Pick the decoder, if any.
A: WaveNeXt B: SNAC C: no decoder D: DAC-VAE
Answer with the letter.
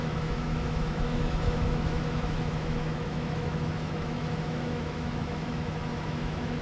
D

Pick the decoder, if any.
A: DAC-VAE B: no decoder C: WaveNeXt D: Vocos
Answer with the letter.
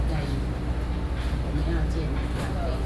B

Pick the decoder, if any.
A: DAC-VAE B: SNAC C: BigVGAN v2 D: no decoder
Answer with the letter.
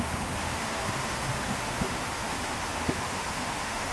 A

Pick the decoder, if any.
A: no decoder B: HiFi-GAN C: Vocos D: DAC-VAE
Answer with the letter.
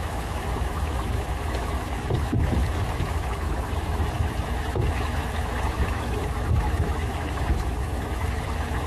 D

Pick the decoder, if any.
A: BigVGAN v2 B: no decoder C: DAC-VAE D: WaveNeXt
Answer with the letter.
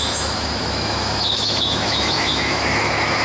C